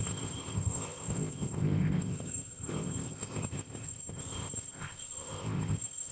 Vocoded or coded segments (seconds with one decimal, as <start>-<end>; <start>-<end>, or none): 0.0-6.1